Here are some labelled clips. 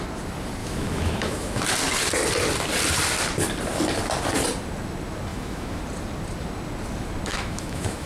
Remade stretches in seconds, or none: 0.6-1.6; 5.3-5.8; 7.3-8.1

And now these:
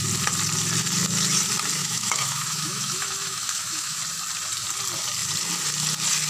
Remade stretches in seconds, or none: 1.8-4.0

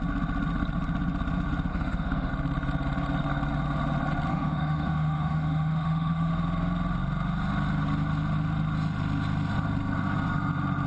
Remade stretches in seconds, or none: 1.7-2.3; 4.3-6.3

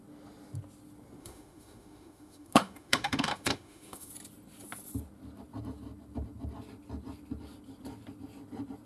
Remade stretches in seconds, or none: 1.2-4.1

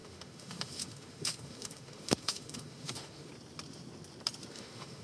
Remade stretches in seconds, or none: 0.0-3.3; 4.5-5.0